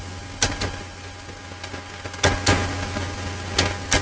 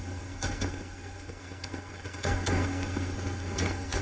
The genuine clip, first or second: first